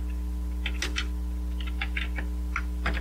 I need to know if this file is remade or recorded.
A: recorded